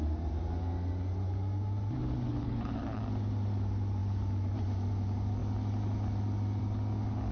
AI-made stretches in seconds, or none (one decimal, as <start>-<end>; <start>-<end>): 2.3-3.0